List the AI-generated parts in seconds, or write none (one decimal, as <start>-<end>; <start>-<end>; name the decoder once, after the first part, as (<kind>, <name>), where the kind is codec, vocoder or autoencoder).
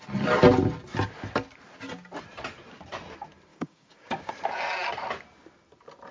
3.5-4.3 (codec, DAC)